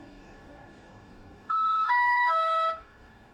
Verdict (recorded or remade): remade